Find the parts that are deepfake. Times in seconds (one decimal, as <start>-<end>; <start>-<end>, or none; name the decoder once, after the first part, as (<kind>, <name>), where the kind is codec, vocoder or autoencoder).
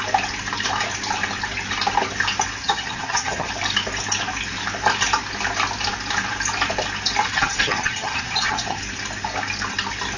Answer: 2.6-3.5 (vocoder, HiFi-GAN); 7.3-8.8